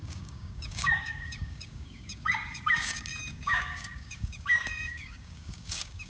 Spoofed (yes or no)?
yes